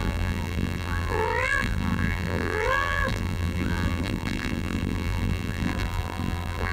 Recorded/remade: remade